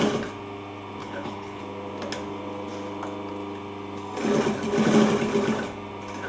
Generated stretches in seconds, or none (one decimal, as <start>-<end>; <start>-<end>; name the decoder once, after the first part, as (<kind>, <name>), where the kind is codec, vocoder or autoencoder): 1.0-1.6 (codec, HILCodec)